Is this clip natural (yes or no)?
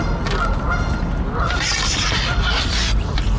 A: yes